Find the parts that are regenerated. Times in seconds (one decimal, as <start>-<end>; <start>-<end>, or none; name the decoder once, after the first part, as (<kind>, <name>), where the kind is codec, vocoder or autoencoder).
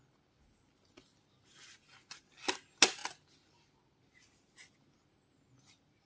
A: none